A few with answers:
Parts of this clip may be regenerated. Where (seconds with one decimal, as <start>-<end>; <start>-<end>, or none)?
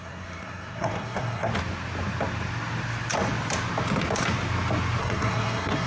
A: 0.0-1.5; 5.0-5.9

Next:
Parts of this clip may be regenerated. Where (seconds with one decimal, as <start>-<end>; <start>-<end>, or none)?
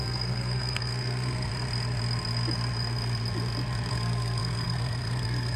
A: 0.0-1.5; 3.9-5.6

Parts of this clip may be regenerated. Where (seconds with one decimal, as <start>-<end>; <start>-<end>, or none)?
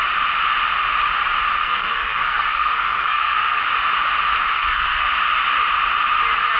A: 1.6-3.6; 4.5-5.1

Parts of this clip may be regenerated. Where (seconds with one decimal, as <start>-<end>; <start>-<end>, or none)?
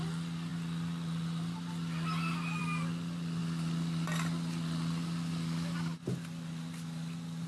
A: none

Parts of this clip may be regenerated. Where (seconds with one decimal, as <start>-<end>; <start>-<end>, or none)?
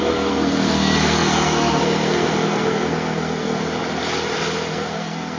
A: 0.0-3.6; 4.7-5.4